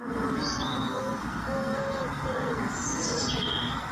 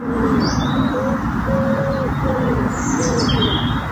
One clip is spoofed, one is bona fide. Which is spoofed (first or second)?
first